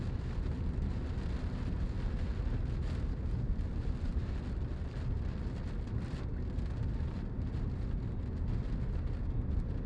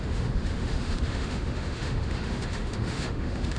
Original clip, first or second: first